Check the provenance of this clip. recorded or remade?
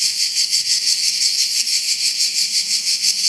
remade